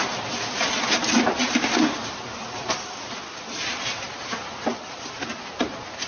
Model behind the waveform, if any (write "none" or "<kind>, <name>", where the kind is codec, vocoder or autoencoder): none